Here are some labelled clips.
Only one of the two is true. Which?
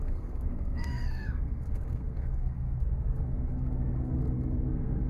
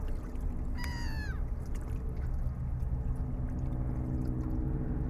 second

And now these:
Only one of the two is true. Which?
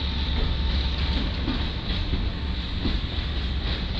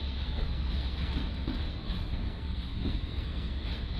first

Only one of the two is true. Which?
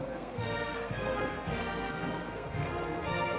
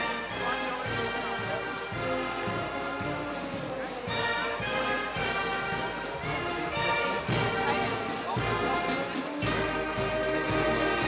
second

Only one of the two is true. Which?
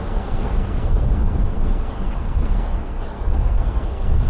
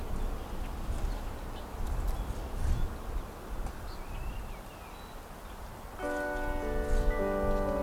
second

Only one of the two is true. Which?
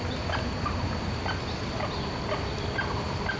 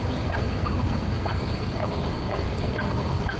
first